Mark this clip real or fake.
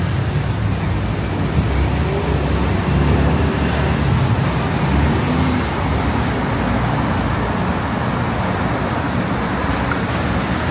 real